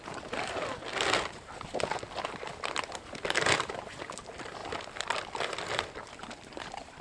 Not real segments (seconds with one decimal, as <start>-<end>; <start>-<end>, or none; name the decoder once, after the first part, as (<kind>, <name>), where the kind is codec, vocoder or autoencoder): none